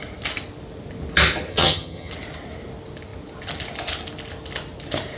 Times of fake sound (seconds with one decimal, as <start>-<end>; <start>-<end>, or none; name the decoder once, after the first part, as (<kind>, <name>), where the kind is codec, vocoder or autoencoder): 1.5-2.1 (vocoder, HiFi-GAN)